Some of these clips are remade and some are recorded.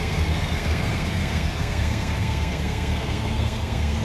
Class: remade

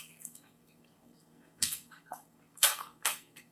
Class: remade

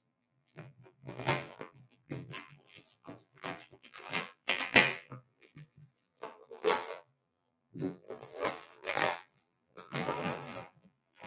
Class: remade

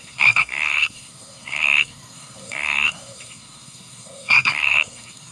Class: remade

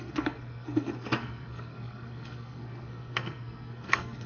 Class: remade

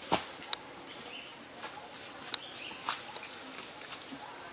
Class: recorded